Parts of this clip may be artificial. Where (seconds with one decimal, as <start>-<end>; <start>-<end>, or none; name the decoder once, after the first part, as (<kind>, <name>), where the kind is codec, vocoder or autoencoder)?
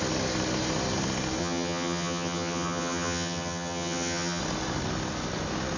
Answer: 1.4-4.4 (vocoder, HiFi-GAN)